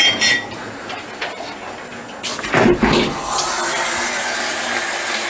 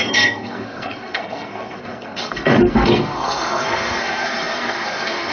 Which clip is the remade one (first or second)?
second